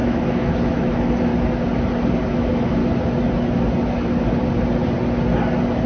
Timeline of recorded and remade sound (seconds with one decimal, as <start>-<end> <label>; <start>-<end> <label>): 0.0-1.3 remade; 1.3-2.2 recorded; 2.2-2.8 remade; 2.8-5.9 recorded